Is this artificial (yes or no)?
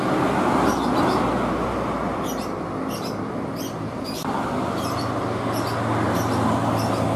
no